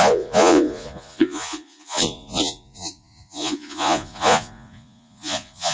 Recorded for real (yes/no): no